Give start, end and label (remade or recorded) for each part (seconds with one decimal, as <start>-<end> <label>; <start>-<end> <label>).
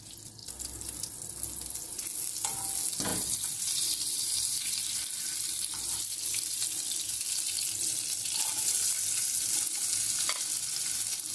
0.0-0.4 recorded; 0.4-1.3 remade; 1.3-3.1 recorded; 3.1-7.3 remade; 7.3-11.3 recorded